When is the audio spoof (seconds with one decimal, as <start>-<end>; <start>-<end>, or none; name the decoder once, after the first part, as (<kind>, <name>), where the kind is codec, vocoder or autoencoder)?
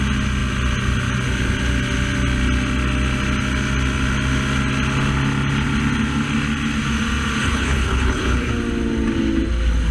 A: 7.4-8.5 (codec, HILCodec)